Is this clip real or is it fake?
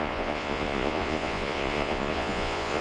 fake